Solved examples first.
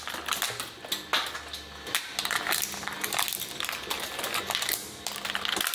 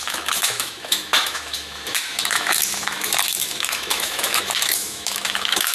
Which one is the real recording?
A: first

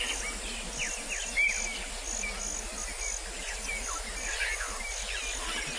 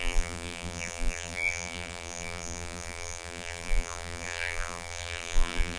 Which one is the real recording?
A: first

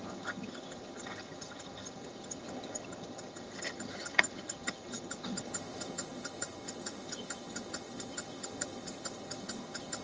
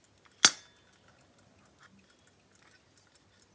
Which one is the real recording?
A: second